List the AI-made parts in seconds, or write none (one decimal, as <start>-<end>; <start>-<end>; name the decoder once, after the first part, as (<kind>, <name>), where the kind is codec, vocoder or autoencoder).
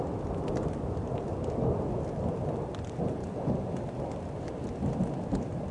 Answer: none